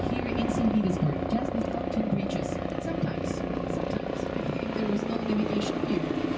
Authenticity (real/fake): real